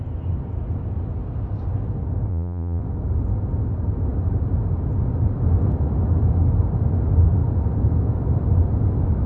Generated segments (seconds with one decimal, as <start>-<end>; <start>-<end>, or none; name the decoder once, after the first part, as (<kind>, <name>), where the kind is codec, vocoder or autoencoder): 2.3-2.8 (vocoder, Vocos)